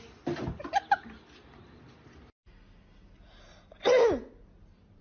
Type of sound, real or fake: real